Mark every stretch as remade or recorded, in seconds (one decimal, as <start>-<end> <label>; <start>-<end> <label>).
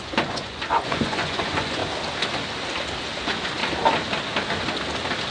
0.0-1.8 remade; 1.8-3.2 recorded; 3.2-3.6 remade; 3.6-5.3 recorded